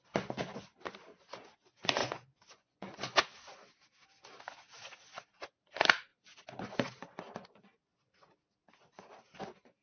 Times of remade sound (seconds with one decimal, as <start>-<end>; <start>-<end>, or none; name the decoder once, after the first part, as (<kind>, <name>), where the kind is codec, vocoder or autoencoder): 2.0-3.2 (vocoder, Vocos)